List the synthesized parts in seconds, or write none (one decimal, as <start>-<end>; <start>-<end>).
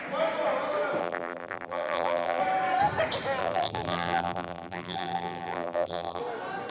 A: 1.0-2.4; 3.4-6.2